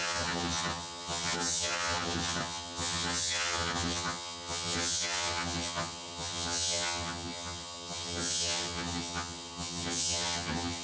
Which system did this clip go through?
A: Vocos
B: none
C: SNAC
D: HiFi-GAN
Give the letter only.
D